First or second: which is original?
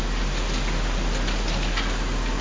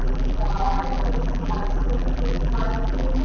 first